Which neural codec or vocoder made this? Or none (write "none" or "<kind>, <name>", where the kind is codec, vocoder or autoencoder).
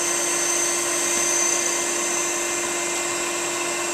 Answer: none